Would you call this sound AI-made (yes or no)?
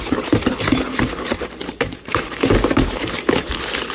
yes